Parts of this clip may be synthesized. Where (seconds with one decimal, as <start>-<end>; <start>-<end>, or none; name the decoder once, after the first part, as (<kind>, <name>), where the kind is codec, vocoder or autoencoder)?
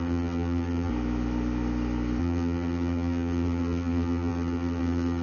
0.0-0.9 (vocoder, BigVGAN v2); 2.2-5.2